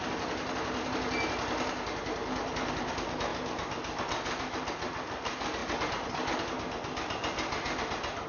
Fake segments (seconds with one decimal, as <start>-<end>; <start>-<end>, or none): none